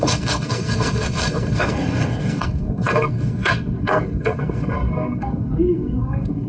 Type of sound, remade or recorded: remade